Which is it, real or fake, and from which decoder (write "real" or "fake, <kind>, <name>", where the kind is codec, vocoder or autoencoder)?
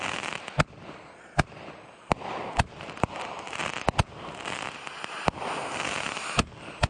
real